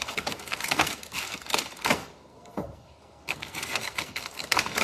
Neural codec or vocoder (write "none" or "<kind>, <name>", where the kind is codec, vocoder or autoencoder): codec, SNAC